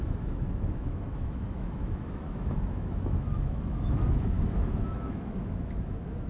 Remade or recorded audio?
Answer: remade